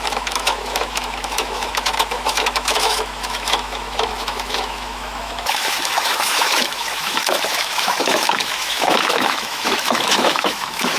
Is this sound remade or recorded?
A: remade